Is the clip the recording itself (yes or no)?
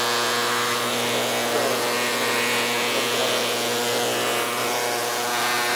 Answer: yes